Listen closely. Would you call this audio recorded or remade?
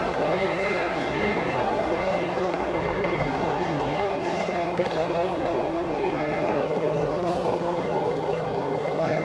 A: remade